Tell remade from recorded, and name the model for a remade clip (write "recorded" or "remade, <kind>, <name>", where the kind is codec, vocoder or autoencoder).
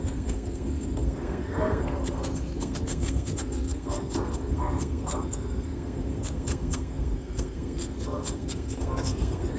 remade, codec, SNAC